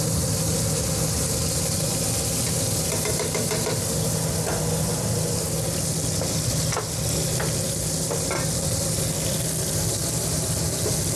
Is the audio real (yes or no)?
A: yes